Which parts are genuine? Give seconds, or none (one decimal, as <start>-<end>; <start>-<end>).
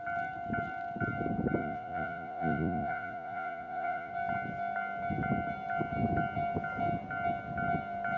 0.0-1.6; 4.1-8.2